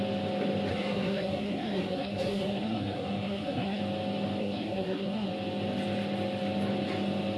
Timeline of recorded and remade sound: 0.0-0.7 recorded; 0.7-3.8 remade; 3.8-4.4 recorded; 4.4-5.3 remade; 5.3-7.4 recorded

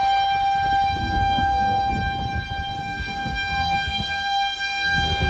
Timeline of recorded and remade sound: 0.0-1.0 recorded; 1.0-1.9 remade; 1.9-2.8 recorded; 2.8-5.3 remade

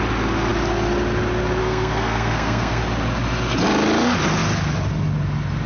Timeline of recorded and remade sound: 0.0-1.6 recorded; 1.6-2.8 remade; 2.8-5.7 recorded

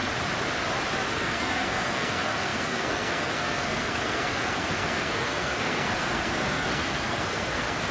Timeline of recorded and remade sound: 0.0-1.1 recorded; 1.1-7.9 remade